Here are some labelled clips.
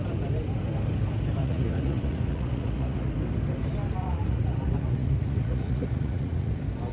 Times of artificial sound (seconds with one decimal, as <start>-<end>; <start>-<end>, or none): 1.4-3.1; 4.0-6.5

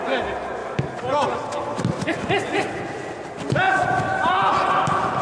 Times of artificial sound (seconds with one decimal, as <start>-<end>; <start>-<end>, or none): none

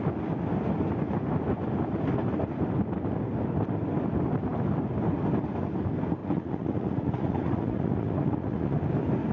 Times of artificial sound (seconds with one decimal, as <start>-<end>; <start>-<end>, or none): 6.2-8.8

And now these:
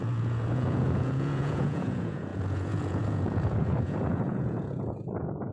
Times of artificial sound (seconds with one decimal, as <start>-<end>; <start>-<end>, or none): 0.0-5.5

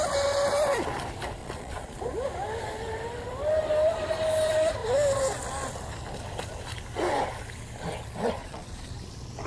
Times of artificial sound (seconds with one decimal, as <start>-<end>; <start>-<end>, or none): 1.4-2.0; 8.4-8.9

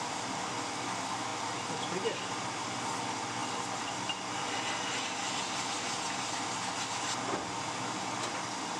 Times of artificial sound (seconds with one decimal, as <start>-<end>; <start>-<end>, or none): none

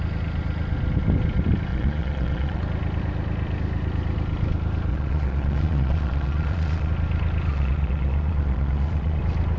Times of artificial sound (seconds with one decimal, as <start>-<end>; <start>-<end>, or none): 1.7-2.6; 4.9-6.9; 7.5-9.2